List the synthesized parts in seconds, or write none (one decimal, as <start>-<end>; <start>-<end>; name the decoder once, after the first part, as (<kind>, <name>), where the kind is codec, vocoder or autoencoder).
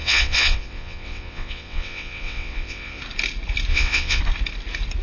0.0-3.0 (vocoder, WaveNeXt); 3.7-4.2